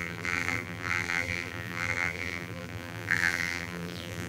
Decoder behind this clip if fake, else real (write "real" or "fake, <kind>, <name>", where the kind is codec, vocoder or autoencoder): fake, vocoder, BigVGAN v2